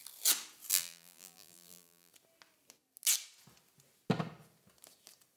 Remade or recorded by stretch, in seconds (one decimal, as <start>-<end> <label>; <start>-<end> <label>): 0.0-0.7 recorded; 0.7-2.1 remade; 2.1-5.4 recorded